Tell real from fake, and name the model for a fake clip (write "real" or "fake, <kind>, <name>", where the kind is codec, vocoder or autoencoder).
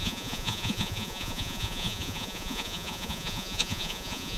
fake, vocoder, Vocos